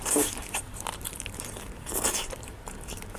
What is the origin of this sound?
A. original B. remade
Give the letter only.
B